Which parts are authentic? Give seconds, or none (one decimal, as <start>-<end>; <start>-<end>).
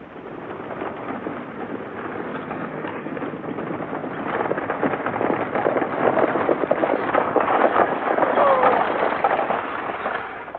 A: 0.0-2.3; 3.2-6.8; 8.2-10.6